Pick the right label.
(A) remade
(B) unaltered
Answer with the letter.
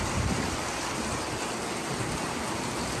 B